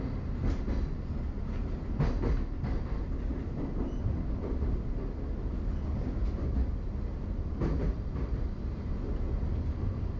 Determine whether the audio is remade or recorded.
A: recorded